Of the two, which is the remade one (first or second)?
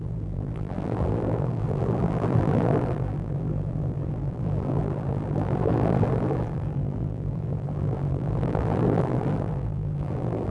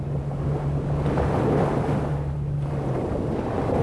first